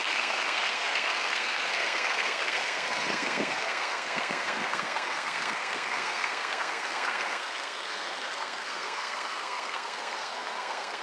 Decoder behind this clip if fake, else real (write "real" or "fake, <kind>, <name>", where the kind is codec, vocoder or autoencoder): fake, codec, SNAC